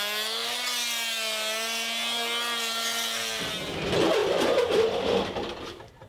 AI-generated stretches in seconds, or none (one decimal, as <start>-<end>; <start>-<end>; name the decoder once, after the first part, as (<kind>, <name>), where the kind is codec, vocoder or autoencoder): 4.2-6.1 (vocoder, BigVGAN v2)